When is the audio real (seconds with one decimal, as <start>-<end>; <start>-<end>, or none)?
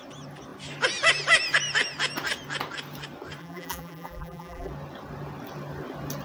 0.0-3.4; 4.7-6.2